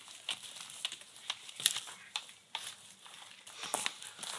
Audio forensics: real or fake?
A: real